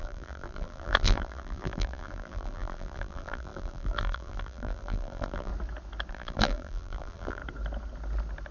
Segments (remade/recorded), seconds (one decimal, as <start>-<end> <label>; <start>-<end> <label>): 0.0-5.5 remade; 5.5-6.1 recorded; 6.1-7.4 remade; 7.4-8.5 recorded